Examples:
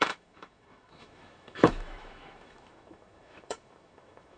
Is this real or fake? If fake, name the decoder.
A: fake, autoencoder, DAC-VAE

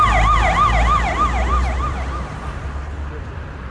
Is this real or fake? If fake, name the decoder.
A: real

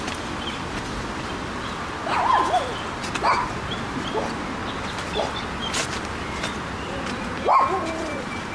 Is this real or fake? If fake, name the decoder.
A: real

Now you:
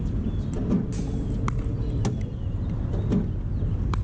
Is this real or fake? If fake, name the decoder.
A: real